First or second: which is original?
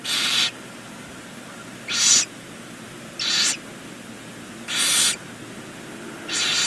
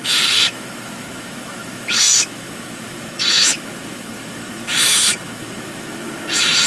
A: first